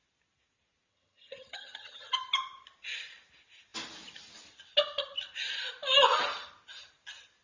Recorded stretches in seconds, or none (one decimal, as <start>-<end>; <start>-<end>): 0.0-0.9; 2.2-7.4